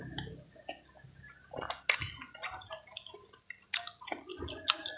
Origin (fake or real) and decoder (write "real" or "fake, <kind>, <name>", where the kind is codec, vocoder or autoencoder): real